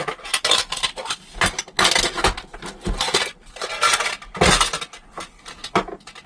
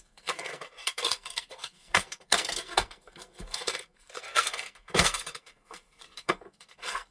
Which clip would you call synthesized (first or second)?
second